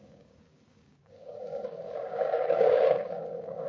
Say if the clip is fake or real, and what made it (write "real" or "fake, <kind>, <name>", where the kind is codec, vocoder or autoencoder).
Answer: fake, codec, DAC